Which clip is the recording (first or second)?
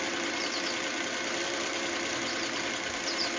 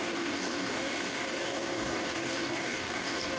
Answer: first